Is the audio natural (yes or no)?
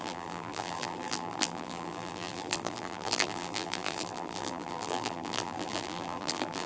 no